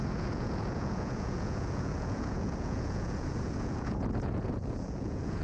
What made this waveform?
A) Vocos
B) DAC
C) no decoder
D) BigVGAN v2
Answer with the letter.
A